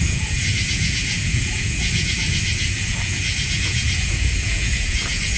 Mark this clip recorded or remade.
remade